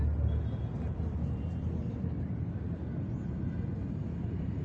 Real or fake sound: real